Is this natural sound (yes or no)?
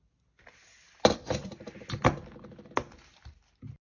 yes